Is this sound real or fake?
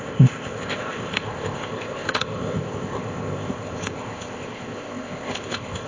fake